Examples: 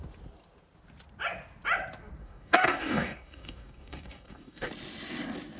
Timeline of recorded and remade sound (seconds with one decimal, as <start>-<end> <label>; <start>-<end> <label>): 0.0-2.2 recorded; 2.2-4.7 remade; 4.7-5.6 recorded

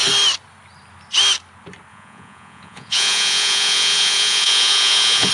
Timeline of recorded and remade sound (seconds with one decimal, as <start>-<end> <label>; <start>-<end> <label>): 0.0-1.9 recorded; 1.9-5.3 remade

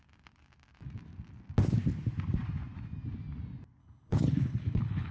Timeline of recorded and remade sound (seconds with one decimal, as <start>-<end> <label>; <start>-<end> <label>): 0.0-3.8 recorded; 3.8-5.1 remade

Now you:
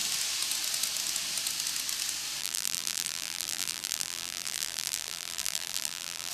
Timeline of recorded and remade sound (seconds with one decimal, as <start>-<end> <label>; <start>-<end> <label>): 0.0-2.4 recorded; 2.4-6.3 remade